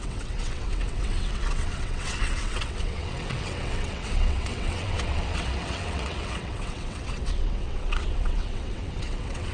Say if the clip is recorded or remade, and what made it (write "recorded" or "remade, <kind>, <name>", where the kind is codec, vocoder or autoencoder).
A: remade, vocoder, WaveNeXt